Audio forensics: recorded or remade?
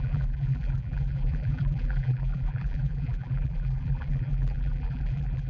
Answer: remade